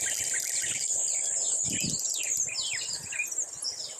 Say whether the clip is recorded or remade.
recorded